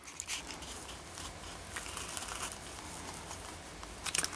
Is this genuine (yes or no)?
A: yes